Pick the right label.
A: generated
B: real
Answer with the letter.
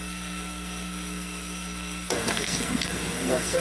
A